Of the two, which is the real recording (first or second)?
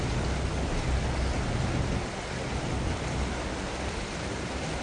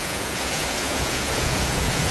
first